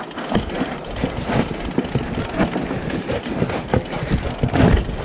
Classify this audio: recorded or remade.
recorded